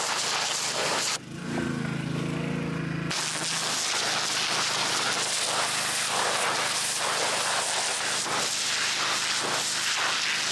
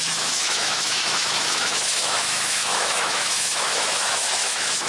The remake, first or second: second